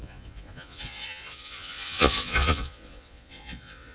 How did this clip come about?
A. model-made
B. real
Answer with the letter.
A